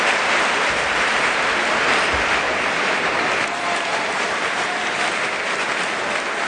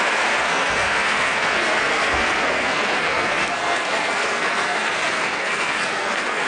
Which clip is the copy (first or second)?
second